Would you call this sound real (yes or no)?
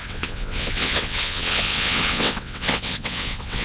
no